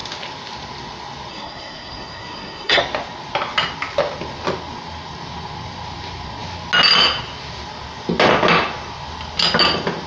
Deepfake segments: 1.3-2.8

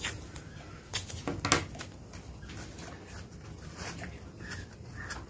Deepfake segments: none